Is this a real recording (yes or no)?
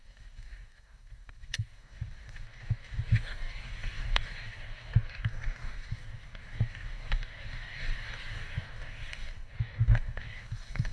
no